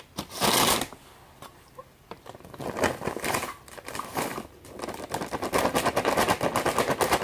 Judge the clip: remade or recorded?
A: recorded